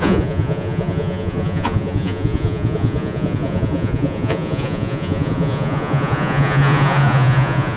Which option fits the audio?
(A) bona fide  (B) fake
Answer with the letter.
B